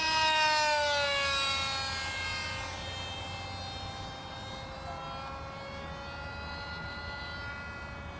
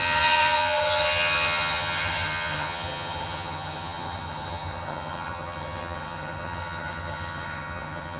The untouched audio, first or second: first